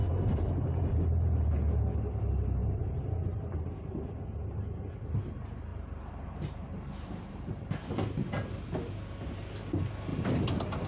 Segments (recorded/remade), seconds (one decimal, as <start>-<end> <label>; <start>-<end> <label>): 0.0-1.5 remade; 1.5-2.6 recorded; 2.6-4.5 remade; 4.5-5.7 recorded; 5.7-7.9 remade; 7.9-10.1 recorded; 10.1-10.9 remade